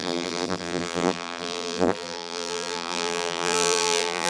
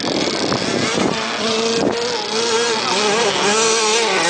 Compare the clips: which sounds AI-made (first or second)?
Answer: first